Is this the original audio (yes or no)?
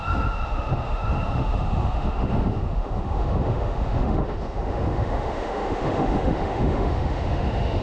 no